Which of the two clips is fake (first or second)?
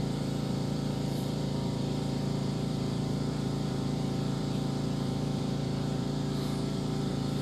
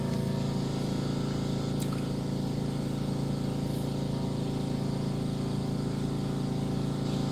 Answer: first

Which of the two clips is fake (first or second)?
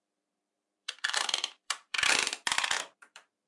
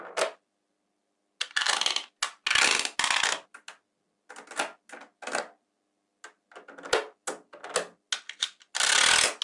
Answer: first